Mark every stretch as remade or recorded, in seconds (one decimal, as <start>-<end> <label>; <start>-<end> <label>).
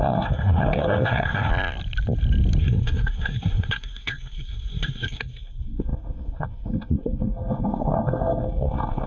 0.0-1.5 remade; 1.5-2.6 recorded; 2.6-9.1 remade